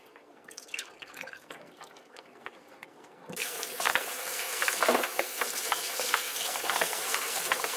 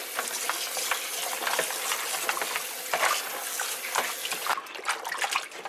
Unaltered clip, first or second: second